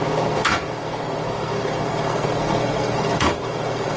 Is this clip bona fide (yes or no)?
no